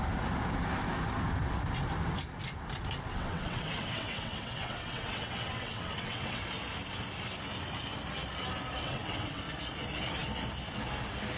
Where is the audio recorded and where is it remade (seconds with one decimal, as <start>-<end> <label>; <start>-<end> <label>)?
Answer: 0.0-3.1 recorded; 3.1-6.4 remade; 6.4-8.8 recorded; 8.8-9.4 remade; 9.4-11.4 recorded